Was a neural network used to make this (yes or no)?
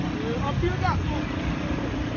no